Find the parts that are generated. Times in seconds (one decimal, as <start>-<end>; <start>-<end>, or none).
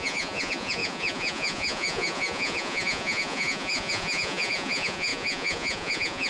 0.0-6.3